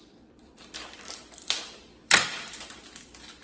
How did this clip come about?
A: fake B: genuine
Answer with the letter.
A